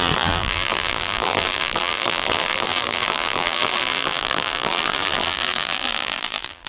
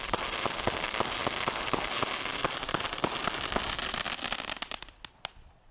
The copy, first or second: first